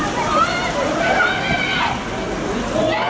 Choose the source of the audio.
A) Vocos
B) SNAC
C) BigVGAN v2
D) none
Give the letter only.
D